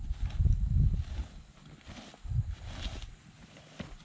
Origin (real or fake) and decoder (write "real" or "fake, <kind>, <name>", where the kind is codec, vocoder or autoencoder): real